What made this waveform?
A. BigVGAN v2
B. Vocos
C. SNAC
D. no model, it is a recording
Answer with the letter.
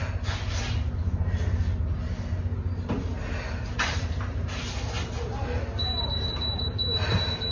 D